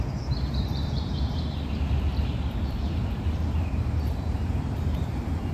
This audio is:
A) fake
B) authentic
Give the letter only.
A